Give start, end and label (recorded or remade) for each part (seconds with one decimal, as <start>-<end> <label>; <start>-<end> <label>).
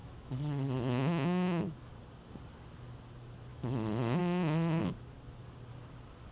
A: 0.0-1.9 remade; 1.9-3.5 recorded; 3.5-4.2 remade; 4.2-6.3 recorded